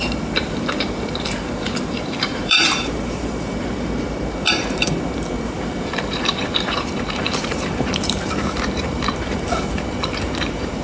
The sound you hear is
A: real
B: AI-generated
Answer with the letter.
B